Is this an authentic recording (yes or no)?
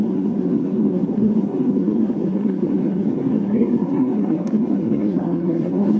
no